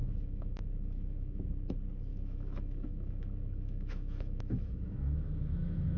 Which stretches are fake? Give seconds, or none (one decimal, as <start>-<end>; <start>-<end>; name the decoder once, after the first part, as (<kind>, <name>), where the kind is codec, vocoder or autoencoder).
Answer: 0.0-1.4 (autoencoder, DAC-VAE); 2.1-6.0